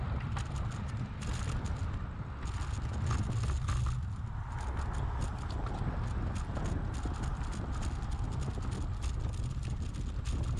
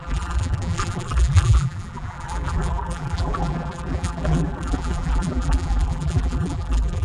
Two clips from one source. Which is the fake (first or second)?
second